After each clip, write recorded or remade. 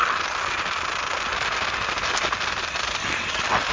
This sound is recorded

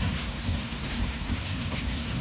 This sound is remade